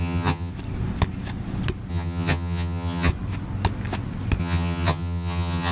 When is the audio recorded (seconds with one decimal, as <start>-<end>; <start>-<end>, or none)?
0.5-1.9; 3.1-4.4